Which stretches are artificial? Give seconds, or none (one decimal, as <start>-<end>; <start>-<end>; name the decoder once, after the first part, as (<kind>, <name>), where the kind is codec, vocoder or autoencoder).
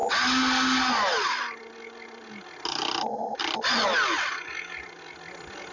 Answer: none